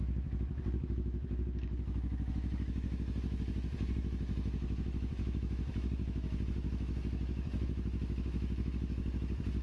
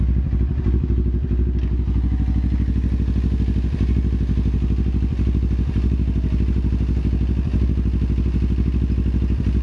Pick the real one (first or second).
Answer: second